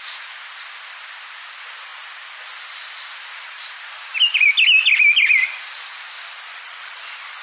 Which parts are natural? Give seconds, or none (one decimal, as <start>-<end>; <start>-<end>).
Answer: 0.0-6.5; 7.0-7.4